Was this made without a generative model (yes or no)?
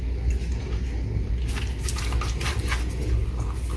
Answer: yes